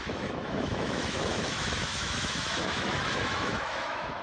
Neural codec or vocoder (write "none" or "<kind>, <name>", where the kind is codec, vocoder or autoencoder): autoencoder, DAC-VAE